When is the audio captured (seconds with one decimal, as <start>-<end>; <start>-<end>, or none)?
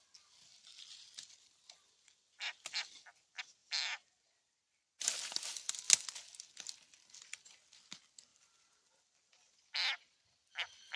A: 0.0-0.5; 2.9-3.6; 5.0-8.3